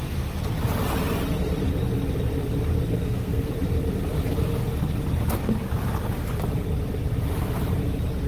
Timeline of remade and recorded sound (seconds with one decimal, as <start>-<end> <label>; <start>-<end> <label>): 0.0-2.9 recorded; 2.9-3.5 remade; 3.5-8.3 recorded